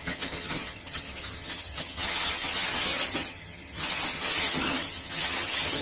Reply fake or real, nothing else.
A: fake